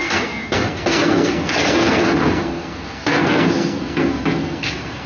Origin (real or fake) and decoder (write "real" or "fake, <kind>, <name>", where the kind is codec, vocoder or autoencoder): fake, codec, SNAC